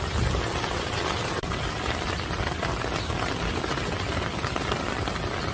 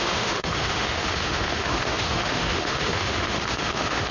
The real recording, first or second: first